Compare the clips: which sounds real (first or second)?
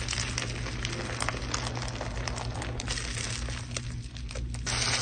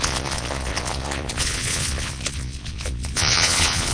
first